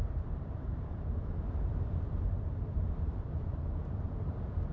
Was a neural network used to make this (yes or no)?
yes